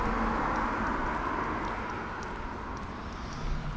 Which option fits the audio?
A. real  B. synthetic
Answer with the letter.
A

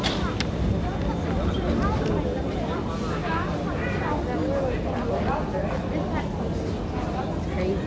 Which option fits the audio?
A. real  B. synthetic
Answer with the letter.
A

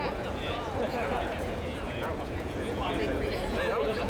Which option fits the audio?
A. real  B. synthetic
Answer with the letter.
B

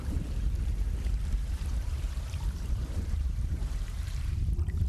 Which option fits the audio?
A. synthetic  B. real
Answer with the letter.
A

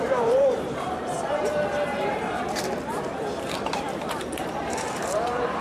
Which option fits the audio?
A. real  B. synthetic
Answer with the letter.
B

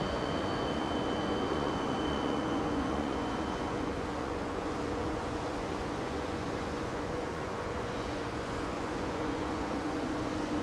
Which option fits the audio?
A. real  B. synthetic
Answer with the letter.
B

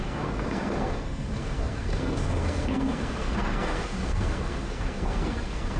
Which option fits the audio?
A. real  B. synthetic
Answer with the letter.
B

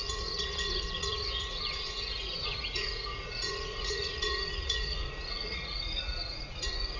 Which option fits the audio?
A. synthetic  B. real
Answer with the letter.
A